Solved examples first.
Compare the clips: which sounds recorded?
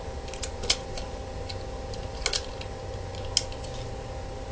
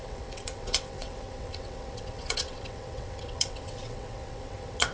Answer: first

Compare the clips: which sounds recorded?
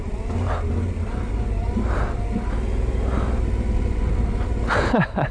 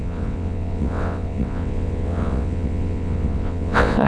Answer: first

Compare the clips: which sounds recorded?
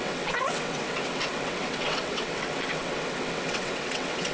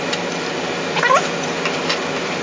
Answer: second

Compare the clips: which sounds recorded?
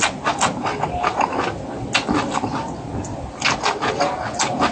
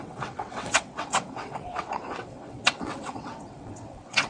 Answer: first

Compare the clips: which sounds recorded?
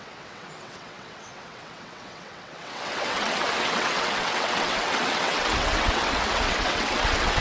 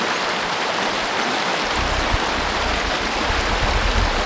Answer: second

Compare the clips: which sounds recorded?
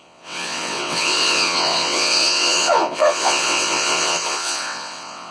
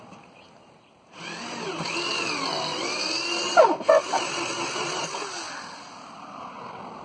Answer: second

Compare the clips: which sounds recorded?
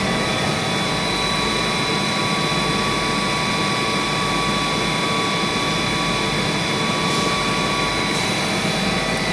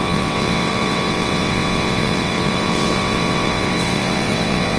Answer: first